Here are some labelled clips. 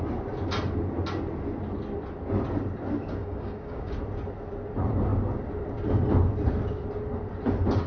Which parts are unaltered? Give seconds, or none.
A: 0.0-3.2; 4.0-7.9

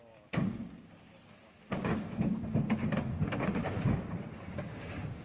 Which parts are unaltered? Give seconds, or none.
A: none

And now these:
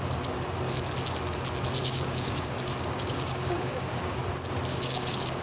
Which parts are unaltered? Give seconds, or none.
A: 0.0-1.8; 4.2-4.7

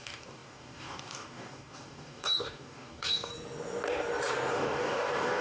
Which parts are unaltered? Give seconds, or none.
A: 3.3-4.5

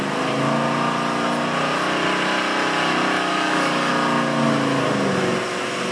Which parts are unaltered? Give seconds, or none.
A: 0.0-3.3; 3.9-5.9